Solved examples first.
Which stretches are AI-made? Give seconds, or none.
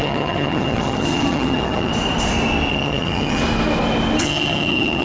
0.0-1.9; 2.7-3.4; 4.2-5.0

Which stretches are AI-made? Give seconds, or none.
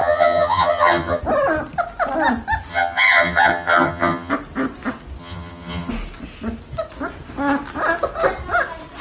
0.0-1.2; 2.7-4.3; 5.2-5.9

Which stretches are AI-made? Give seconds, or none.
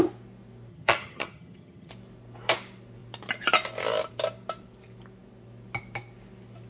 0.7-1.9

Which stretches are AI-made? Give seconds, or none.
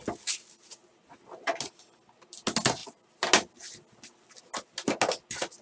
none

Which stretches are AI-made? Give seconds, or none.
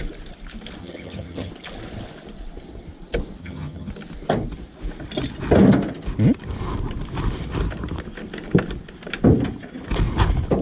0.8-1.5; 3.4-3.9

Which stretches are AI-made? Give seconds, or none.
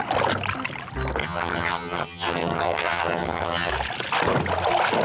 1.2-3.7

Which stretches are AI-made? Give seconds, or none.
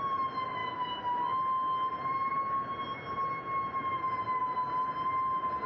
none